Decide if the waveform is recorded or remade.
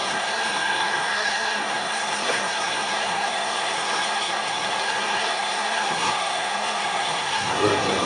remade